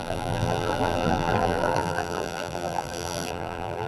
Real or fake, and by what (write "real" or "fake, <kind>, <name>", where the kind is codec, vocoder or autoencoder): fake, vocoder, BigVGAN v2